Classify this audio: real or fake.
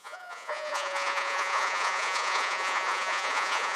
fake